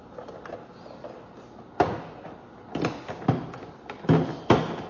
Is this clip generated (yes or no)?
no